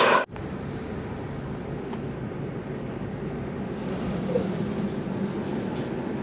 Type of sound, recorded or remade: recorded